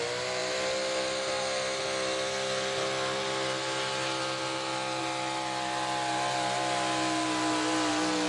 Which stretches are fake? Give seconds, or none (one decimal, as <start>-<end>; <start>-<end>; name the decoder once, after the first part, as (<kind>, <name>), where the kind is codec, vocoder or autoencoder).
none